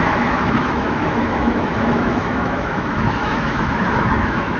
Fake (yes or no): yes